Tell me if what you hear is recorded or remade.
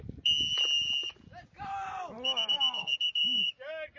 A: recorded